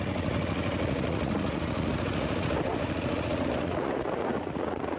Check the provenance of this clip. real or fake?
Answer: fake